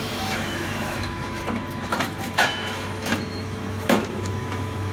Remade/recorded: remade